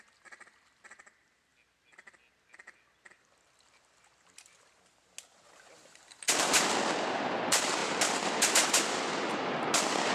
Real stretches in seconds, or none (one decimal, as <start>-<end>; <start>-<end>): 0.0-10.1